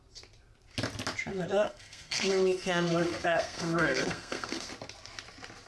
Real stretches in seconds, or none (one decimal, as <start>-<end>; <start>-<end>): 0.0-1.3; 4.7-5.7